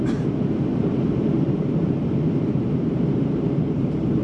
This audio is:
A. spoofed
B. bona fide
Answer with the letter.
A